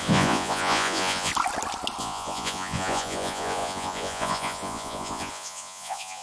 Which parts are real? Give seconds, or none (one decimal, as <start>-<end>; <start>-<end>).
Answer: 1.3-2.0